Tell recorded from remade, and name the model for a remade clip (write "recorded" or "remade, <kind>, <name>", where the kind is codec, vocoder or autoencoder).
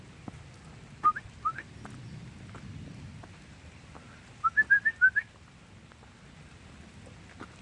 recorded